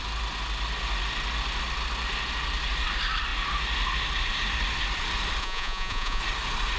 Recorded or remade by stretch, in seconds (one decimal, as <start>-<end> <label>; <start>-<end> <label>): 0.0-5.4 recorded; 5.4-6.2 remade; 6.2-6.8 recorded